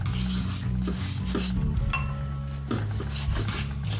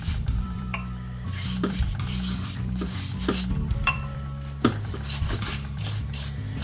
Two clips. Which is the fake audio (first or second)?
second